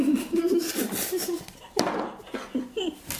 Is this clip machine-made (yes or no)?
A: no